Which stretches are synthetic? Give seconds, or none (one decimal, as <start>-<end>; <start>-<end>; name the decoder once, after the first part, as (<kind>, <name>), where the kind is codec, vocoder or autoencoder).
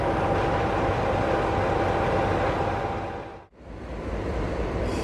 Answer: 3.3-4.1 (vocoder, BigVGAN v2)